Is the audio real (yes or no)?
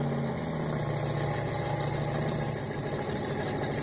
yes